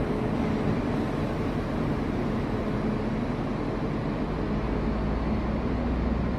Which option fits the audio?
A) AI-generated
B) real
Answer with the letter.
B